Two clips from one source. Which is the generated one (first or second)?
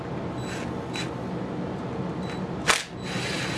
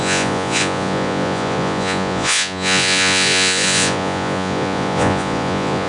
second